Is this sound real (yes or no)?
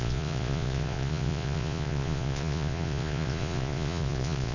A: no